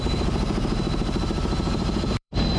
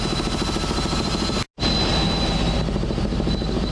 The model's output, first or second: first